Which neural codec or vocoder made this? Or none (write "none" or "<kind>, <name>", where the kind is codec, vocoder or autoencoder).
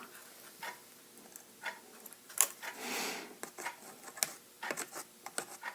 none